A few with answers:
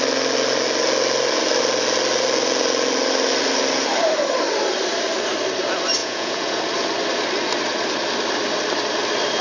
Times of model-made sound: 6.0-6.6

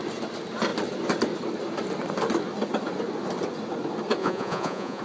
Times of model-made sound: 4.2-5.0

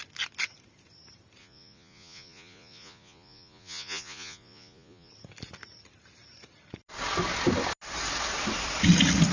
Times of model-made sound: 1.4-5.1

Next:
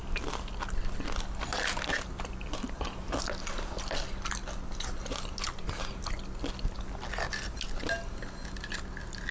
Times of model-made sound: none

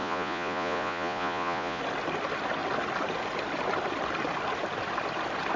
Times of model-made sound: 0.0-1.8

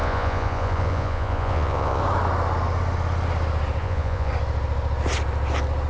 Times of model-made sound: 0.0-2.0; 3.8-4.3